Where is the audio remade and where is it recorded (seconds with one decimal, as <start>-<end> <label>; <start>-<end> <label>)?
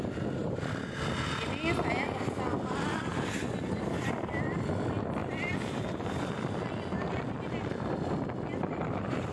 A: 0.0-0.4 remade; 0.4-2.2 recorded; 2.2-3.1 remade; 3.1-4.1 recorded; 4.1-9.3 remade